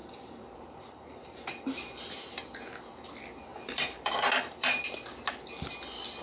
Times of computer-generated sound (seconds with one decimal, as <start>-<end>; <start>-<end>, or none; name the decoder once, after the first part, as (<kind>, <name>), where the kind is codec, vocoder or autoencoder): 0.0-2.4 (vocoder, BigVGAN v2); 3.5-4.8